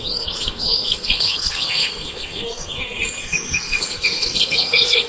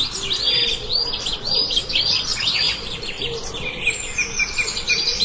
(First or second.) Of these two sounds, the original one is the second